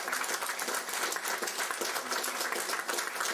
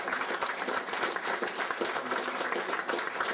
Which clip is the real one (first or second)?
first